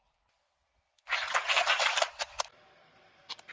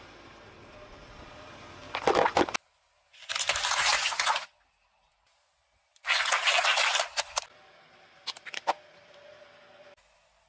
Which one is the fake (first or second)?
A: first